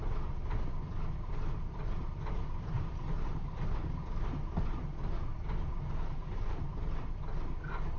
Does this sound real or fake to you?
real